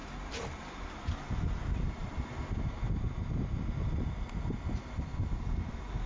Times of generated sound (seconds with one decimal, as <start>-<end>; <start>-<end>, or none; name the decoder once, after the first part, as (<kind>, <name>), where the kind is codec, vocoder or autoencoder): none